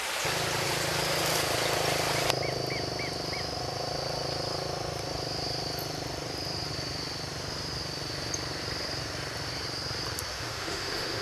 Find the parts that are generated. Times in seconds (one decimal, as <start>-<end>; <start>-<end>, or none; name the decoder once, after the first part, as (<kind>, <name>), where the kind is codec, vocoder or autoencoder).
10.3-11.2 (autoencoder, DAC-VAE)